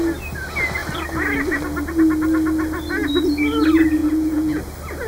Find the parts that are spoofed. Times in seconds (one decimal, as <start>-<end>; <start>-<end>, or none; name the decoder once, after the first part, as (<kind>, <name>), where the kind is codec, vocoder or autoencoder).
4.0-4.6 (vocoder, Vocos)